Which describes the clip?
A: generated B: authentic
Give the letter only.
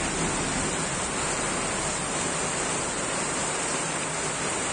B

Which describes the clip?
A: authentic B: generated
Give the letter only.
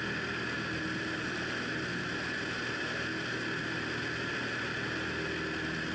A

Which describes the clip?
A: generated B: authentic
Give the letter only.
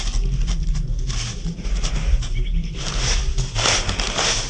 B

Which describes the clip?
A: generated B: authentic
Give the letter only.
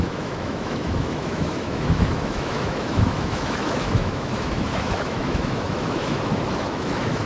A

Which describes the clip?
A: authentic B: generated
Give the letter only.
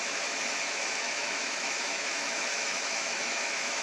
B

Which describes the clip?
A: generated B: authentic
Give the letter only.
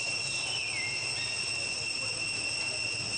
B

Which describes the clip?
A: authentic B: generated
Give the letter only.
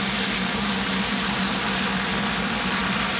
A